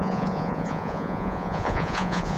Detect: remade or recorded remade